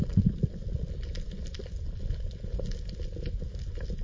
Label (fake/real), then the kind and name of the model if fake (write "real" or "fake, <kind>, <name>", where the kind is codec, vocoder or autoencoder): real